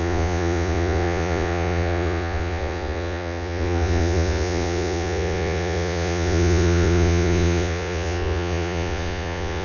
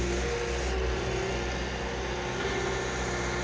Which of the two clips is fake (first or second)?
first